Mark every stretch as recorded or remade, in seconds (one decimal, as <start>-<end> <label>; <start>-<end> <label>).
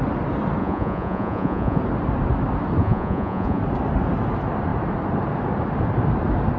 0.0-0.6 recorded; 0.6-1.8 remade; 1.8-2.8 recorded; 2.8-3.6 remade; 3.6-6.6 recorded